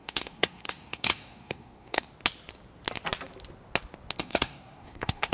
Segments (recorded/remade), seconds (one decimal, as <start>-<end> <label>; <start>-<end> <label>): 0.0-2.1 remade; 2.1-4.2 recorded; 4.2-5.3 remade